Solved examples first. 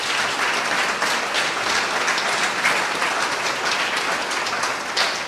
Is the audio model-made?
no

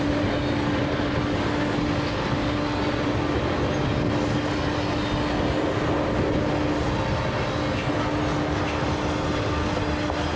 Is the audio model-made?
no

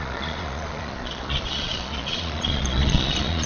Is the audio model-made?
yes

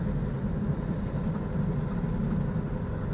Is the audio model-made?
no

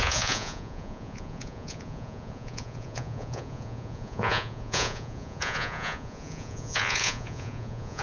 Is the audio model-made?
yes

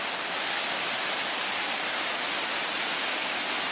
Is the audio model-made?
no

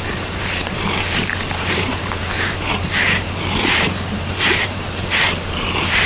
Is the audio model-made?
yes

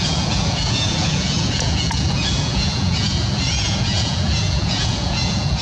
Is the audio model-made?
yes